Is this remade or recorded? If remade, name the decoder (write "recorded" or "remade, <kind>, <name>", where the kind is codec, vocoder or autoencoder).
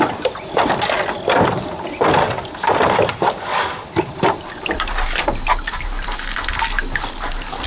recorded